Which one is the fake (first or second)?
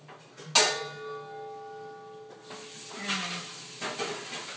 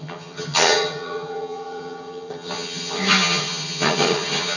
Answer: second